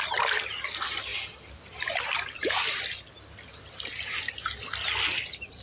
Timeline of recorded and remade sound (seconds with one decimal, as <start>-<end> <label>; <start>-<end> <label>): 0.0-5.6 recorded